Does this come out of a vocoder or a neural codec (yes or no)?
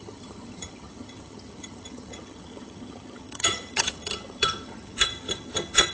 yes